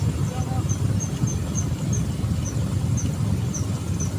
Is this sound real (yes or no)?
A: yes